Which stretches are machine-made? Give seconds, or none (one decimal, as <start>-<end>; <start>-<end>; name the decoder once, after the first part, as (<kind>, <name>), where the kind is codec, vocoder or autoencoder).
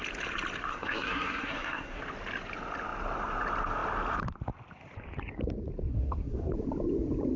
0.7-2.0 (codec, SNAC); 5.9-6.5